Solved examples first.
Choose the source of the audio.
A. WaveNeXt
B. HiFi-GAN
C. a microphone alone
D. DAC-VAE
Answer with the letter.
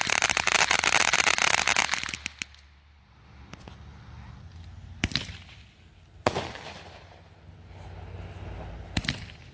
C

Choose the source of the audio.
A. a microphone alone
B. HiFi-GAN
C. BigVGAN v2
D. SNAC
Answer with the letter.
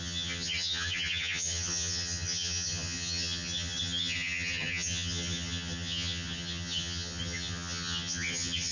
B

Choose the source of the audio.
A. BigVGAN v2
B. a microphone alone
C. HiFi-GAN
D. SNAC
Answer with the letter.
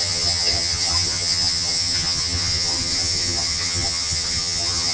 C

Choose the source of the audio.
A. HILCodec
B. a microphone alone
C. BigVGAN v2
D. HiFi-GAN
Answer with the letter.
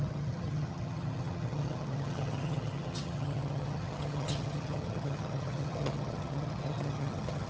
D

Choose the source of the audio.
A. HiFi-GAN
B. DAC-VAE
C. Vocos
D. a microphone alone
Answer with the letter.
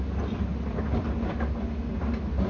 D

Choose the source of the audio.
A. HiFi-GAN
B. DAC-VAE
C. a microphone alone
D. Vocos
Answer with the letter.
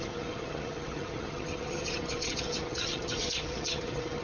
A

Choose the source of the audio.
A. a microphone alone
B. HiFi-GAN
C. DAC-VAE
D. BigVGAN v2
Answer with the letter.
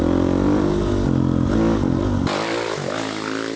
A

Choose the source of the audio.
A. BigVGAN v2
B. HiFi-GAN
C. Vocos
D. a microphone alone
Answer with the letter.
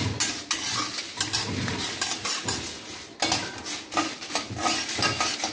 D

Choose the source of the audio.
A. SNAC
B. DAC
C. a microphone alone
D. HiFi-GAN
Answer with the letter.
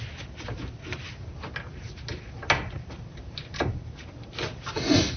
C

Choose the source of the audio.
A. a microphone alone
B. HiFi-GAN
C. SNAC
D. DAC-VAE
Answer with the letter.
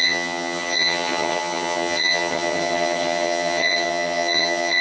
B